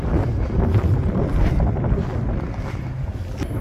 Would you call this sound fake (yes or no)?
no